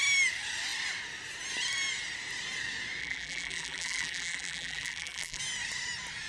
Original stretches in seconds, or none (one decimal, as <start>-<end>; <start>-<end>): 0.0-3.0; 5.4-6.3